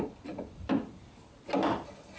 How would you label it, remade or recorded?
recorded